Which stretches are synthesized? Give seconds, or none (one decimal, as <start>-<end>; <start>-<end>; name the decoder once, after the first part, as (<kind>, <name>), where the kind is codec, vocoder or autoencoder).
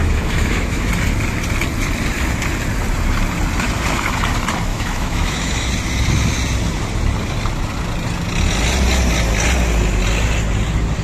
0.0-0.9 (autoencoder, DAC-VAE); 4.7-5.7